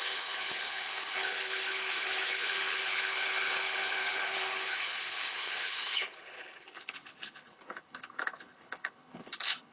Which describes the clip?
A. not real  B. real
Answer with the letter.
A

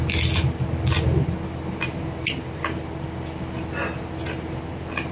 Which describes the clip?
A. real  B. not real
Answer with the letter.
A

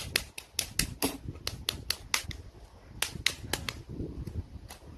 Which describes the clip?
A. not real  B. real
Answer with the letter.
B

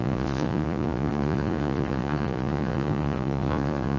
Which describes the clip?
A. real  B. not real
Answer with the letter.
B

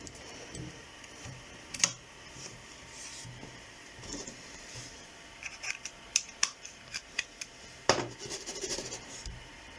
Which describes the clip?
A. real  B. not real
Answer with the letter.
B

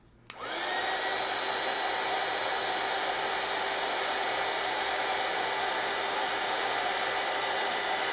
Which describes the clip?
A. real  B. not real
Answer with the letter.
A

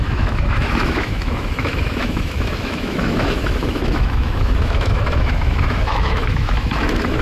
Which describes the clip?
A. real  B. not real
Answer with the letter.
B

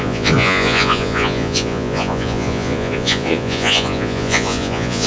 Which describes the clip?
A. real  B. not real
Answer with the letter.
B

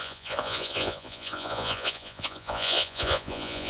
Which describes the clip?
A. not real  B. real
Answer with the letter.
A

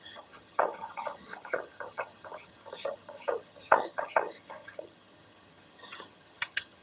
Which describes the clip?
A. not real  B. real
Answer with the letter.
A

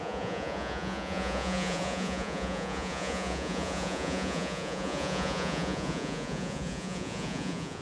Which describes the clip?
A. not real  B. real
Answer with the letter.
A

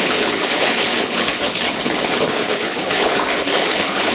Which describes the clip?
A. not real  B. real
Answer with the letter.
A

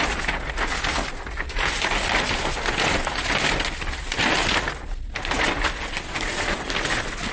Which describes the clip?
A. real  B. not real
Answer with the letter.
A